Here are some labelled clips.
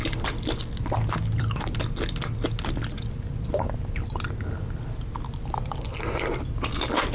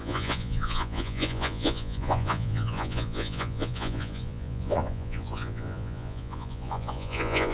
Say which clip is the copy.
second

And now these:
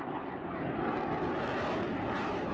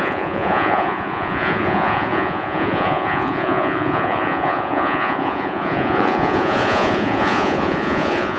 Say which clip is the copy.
second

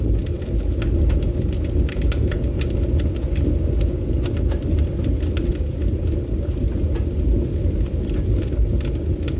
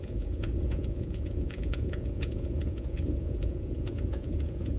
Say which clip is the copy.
second